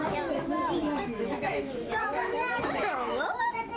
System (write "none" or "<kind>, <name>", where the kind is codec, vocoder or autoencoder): autoencoder, DAC-VAE